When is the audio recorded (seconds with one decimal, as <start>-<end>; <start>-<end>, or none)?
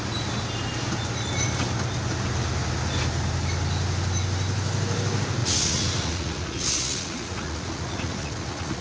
0.0-5.4